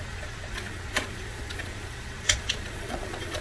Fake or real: fake